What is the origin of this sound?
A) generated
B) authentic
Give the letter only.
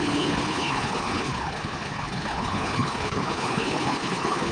A